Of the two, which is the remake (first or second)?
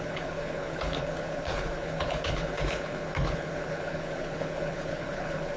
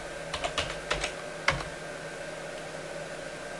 first